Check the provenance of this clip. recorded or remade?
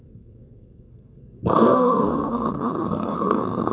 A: remade